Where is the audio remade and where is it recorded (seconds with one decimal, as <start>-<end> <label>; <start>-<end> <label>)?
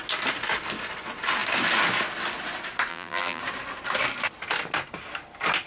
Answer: 0.0-2.9 recorded; 2.9-3.4 remade; 3.4-5.7 recorded